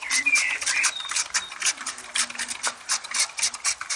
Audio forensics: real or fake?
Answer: real